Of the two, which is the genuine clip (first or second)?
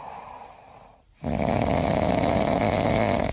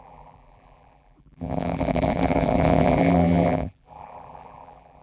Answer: first